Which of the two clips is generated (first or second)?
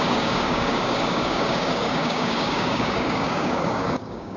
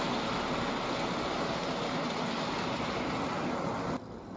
first